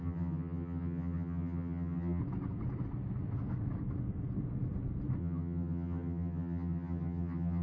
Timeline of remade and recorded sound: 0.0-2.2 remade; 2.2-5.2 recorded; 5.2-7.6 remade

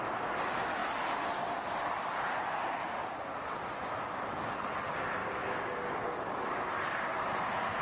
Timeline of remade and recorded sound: 0.0-7.8 recorded

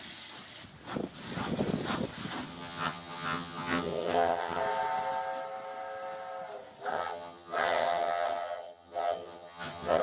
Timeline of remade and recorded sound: 0.0-2.5 recorded; 2.5-4.6 remade; 4.6-6.9 recorded; 6.9-10.0 remade

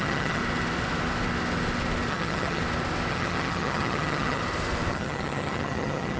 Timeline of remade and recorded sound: 0.0-0.4 remade; 0.4-2.1 recorded; 2.1-2.6 remade; 2.6-3.1 recorded; 3.1-4.4 remade; 4.4-4.9 recorded; 4.9-6.2 remade

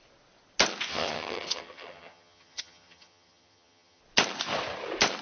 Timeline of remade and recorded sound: 0.0-0.9 recorded; 0.9-4.0 remade; 4.0-5.2 recorded

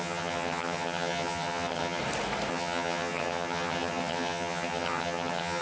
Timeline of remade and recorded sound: 0.0-2.0 remade; 2.0-2.5 recorded; 2.5-5.6 remade

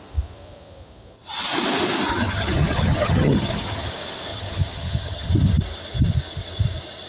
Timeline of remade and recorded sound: 0.0-2.1 recorded; 2.1-3.9 remade; 3.9-4.3 recorded; 4.3-5.3 remade; 5.3-7.1 recorded